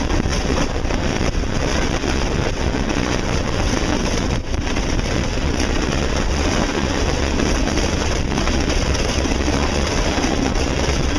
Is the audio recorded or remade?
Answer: remade